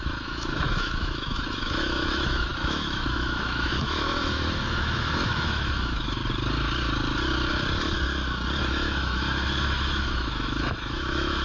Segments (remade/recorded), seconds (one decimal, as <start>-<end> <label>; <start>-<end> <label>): 0.0-6.2 remade; 6.2-8.6 recorded; 8.6-11.4 remade